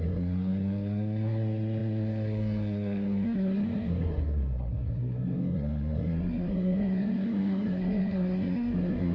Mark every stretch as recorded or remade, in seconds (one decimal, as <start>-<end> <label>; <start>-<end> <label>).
0.0-9.1 remade